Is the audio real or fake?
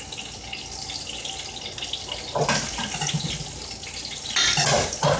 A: real